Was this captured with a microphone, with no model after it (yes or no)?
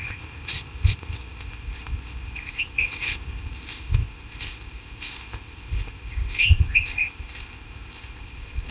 no